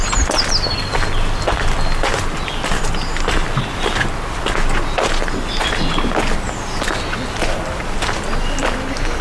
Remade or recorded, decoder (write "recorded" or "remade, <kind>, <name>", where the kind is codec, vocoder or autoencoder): recorded